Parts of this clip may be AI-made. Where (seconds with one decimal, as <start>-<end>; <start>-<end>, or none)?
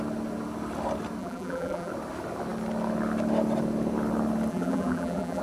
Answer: 1.2-1.9; 4.5-5.4